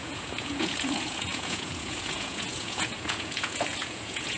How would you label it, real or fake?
fake